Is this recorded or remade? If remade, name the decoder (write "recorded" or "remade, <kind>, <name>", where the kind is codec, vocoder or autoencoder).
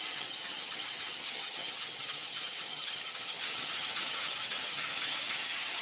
remade, vocoder, HiFi-GAN